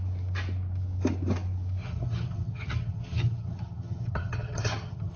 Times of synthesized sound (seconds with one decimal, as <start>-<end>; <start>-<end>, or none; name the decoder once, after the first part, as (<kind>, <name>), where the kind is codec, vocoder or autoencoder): 1.8-5.2 (vocoder, HiFi-GAN)